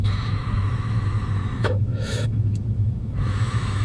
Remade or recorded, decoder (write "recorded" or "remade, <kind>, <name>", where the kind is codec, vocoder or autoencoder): remade, autoencoder, DAC-VAE